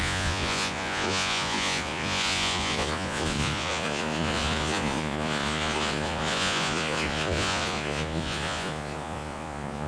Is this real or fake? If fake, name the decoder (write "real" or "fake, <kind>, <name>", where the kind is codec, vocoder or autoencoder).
fake, vocoder, Vocos